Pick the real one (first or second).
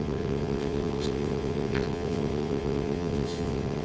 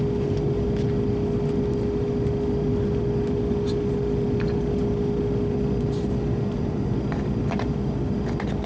second